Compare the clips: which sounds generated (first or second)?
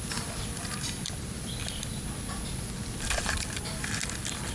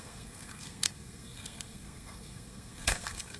second